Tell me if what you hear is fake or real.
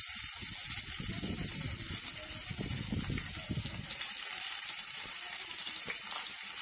real